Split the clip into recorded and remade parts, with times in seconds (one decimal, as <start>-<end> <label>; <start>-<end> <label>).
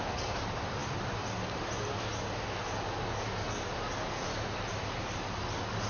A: 0.0-5.9 recorded